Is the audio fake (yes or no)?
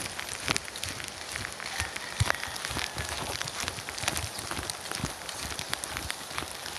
no